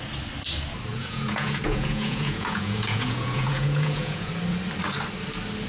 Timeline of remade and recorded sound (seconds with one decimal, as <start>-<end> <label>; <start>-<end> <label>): 0.0-0.9 recorded; 0.9-4.3 remade; 4.3-5.7 recorded